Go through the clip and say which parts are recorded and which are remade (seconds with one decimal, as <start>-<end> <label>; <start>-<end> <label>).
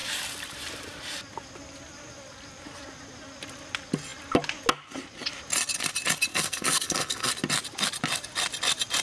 0.0-6.3 recorded; 6.3-7.3 remade; 7.3-9.0 recorded